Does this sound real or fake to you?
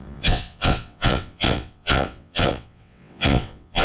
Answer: fake